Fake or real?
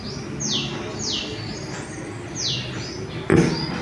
real